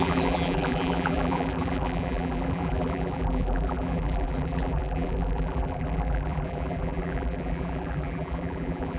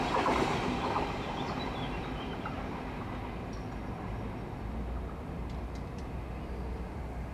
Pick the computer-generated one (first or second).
first